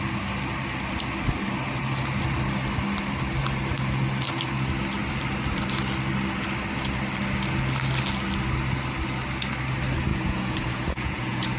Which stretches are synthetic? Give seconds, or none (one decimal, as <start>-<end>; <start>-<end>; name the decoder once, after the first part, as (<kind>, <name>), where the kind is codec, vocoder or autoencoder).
10.1-11.6 (vocoder, Vocos)